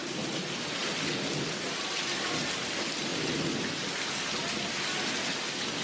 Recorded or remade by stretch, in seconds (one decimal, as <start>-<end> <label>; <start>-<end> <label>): 0.0-0.8 remade; 0.8-5.8 recorded